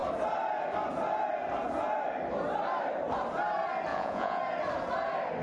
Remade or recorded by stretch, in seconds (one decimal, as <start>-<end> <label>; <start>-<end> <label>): 0.0-3.9 recorded; 3.9-4.4 remade; 4.4-5.4 recorded